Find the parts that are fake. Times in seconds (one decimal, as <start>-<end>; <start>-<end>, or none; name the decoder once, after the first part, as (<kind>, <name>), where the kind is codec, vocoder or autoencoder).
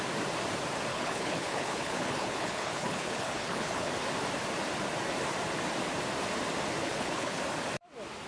0.9-3.9 (codec, HILCodec); 6.8-7.4